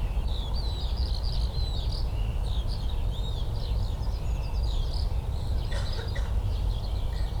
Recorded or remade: recorded